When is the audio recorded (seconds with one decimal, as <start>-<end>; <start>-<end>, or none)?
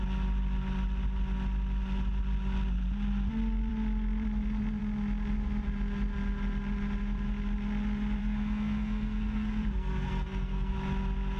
0.0-8.2; 10.7-11.4